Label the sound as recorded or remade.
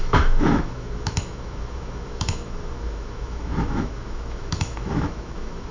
remade